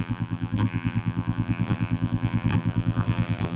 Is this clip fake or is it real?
fake